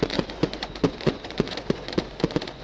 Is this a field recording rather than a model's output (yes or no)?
no